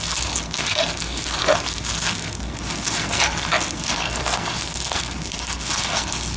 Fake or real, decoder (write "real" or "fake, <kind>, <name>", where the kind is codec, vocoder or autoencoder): fake, codec, SNAC